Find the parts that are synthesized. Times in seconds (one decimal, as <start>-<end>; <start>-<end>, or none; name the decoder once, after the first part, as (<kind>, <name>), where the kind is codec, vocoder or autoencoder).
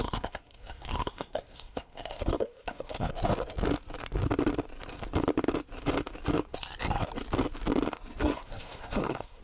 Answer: 0.0-3.1 (codec, SNAC); 8.2-9.4